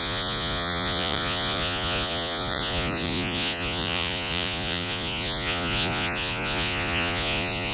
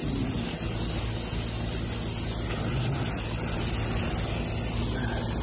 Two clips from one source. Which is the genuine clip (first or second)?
second